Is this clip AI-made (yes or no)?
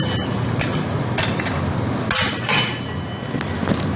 no